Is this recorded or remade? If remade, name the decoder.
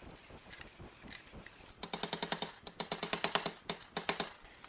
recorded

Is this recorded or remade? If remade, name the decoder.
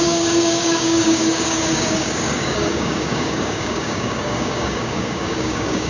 remade, codec, DAC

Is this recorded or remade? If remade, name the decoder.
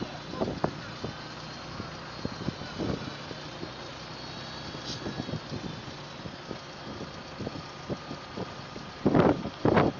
recorded